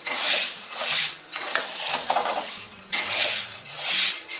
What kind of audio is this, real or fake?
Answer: fake